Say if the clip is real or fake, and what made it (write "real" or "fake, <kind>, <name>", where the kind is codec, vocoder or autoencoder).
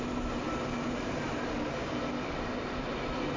real